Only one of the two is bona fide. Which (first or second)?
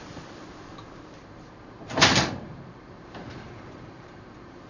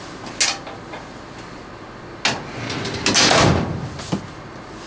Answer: second